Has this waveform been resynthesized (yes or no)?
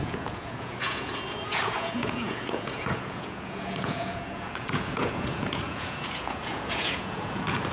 yes